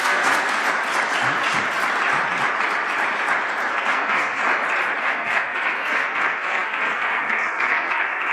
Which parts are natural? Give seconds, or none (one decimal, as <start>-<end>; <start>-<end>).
0.6-3.7; 4.4-5.0